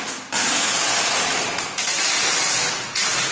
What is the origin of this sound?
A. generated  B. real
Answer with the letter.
B